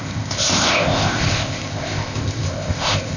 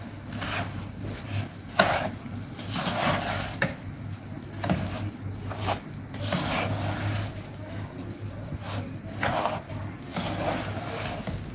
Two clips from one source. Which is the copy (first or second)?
first